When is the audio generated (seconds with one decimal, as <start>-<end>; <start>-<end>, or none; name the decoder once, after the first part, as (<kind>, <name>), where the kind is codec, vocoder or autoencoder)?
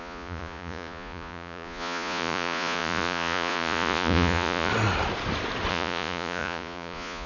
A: 0.0-4.7 (vocoder, Vocos); 5.7-7.3